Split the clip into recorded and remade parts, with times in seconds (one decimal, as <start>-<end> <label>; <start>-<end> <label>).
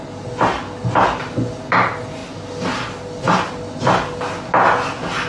0.0-5.3 recorded